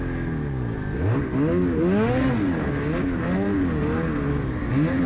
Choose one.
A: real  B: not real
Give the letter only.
A